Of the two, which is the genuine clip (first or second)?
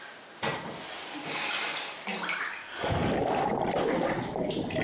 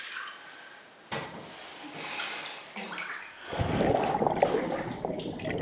first